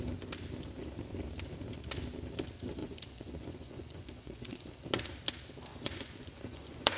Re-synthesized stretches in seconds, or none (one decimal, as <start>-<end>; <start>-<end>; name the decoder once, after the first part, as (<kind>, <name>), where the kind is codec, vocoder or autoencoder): 2.8-4.7 (vocoder, Vocos); 5.7-7.0